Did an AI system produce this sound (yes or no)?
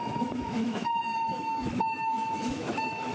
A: yes